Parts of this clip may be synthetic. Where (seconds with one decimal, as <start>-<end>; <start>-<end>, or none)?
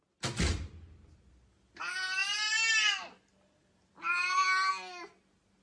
none